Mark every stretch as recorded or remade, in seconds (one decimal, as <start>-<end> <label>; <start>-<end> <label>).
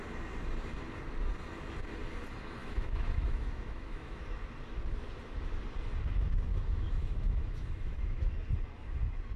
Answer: 0.0-2.6 recorded; 2.6-4.4 remade; 4.4-6.5 recorded; 6.5-8.3 remade; 8.3-9.4 recorded